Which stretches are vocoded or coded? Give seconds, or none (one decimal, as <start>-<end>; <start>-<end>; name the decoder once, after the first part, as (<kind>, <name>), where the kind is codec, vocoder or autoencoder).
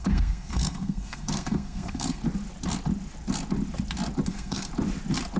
0.0-2.2 (codec, SNAC); 4.3-4.7